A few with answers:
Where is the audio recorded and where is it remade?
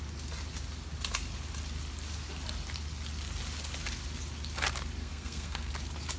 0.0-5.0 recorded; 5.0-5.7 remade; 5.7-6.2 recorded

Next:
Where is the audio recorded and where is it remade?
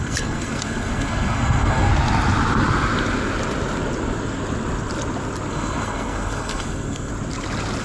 0.0-1.9 remade; 1.9-5.5 recorded; 5.5-7.1 remade; 7.1-7.8 recorded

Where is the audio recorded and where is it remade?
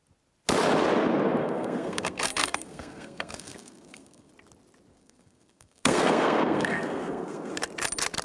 0.0-1.4 recorded; 1.4-4.3 remade; 4.3-4.9 recorded; 4.9-7.5 remade; 7.5-8.2 recorded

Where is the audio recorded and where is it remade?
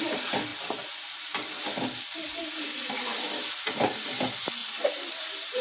0.0-5.6 recorded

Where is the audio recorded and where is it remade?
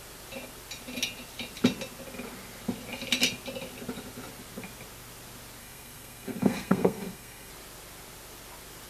0.0-5.6 recorded; 5.6-7.5 remade; 7.5-8.9 recorded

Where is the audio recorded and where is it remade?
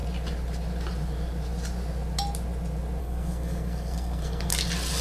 0.0-3.0 recorded; 3.0-4.5 remade; 4.5-5.0 recorded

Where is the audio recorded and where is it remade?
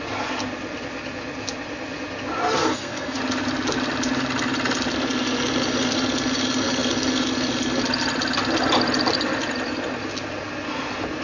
0.0-2.6 recorded; 2.6-3.2 remade; 3.2-11.2 recorded